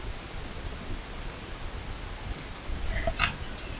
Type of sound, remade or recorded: recorded